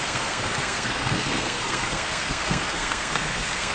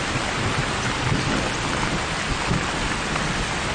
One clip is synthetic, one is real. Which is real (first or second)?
second